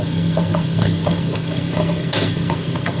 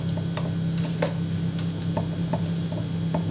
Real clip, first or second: second